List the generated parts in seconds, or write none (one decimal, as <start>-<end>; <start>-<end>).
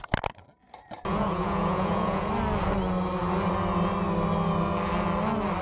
1.1-2.3